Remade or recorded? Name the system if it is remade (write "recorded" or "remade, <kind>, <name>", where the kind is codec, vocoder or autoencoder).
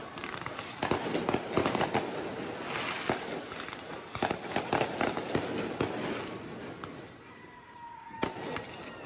recorded